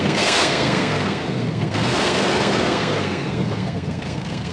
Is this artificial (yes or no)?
yes